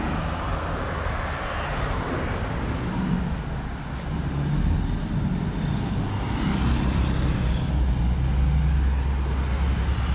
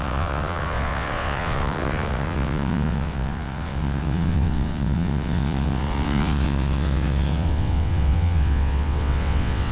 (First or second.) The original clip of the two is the first